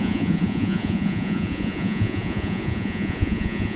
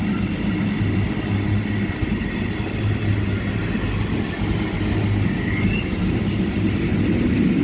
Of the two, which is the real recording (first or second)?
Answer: second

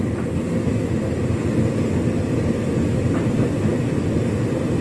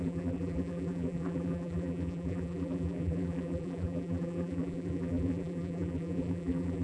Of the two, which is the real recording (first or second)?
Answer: first